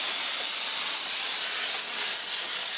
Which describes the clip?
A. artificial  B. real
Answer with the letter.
B